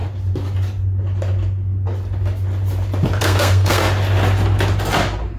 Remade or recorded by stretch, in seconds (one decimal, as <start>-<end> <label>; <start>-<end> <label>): 0.0-3.2 recorded; 3.2-3.8 remade; 3.8-5.4 recorded